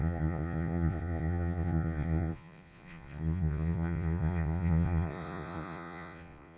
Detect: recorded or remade remade